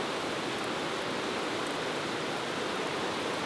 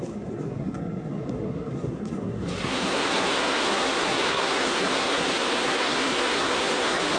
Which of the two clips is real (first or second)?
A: first